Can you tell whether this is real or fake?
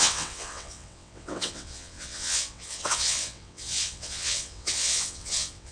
fake